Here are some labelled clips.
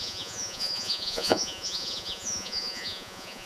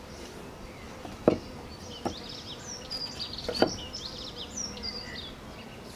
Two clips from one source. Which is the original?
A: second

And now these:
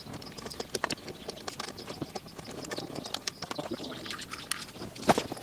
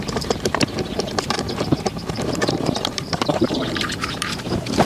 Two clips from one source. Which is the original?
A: first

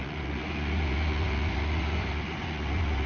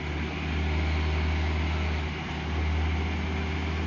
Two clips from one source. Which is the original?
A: second